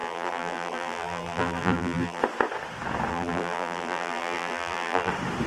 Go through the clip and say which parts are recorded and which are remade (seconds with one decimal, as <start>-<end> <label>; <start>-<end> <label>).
0.0-2.2 remade; 2.2-3.1 recorded; 3.1-5.1 remade; 5.1-5.5 recorded